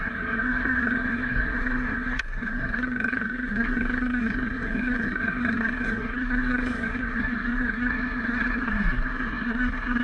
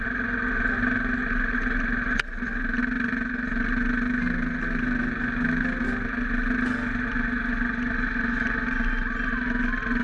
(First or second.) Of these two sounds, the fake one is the first